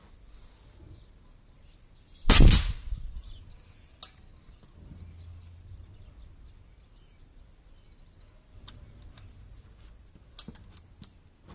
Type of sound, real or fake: real